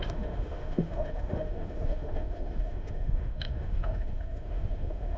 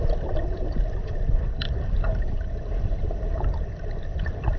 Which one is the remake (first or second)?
first